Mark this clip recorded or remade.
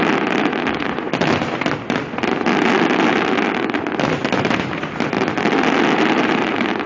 recorded